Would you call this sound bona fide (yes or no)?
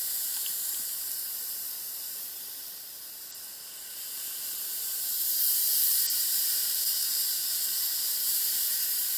no